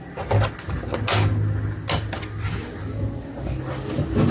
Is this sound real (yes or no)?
yes